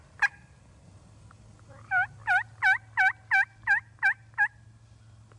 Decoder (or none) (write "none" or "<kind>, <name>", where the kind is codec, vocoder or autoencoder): none